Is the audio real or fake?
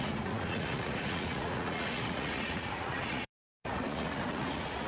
fake